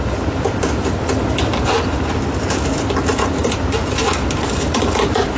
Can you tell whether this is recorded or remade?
recorded